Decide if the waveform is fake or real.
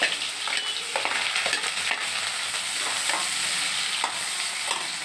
real